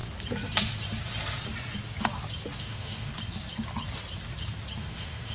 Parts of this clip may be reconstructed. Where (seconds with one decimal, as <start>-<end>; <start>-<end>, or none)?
2.6-3.1; 4.8-5.3

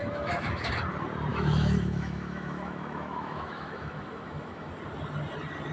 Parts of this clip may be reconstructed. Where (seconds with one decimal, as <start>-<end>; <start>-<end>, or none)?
0.0-0.7; 1.3-4.7

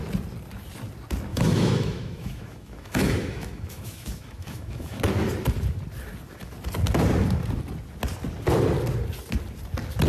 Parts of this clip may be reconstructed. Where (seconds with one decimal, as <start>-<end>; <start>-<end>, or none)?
1.3-5.0

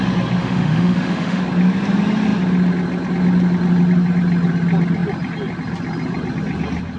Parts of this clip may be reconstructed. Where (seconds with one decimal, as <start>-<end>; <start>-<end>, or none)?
0.4-1.4

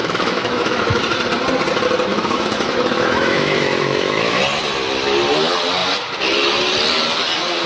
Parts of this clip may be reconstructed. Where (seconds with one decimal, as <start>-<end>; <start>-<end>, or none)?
0.0-1.0; 2.1-4.4

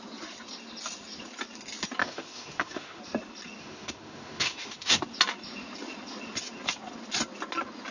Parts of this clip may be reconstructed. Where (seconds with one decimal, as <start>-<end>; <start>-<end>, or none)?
2.0-3.0; 3.6-5.0

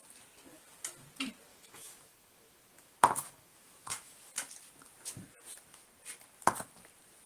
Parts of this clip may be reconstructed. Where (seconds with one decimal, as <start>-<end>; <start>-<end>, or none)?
1.5-4.3